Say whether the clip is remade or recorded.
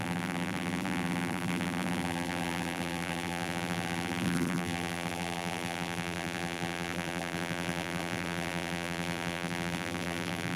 remade